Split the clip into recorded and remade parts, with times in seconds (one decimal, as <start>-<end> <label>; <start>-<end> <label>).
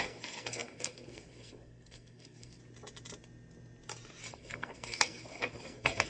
0.0-2.6 remade; 2.6-4.3 recorded; 4.3-6.1 remade